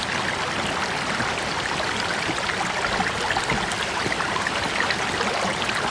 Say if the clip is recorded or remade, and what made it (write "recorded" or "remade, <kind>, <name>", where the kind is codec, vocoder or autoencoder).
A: recorded